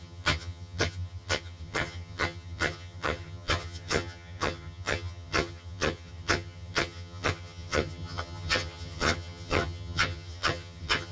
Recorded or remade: remade